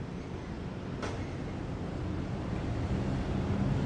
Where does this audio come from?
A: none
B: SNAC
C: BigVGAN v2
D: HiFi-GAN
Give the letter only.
A